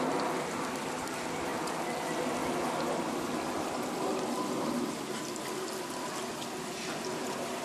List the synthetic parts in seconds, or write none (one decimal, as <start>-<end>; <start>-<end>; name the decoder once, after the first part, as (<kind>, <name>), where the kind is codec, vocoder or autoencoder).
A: none